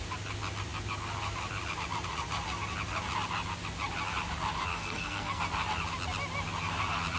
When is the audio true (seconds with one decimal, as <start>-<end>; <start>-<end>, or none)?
0.0-4.7; 5.4-7.2